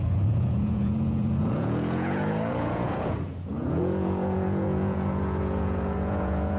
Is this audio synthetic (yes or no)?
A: yes